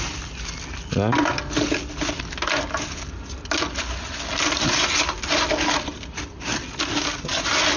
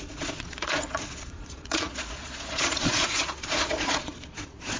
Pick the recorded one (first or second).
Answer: first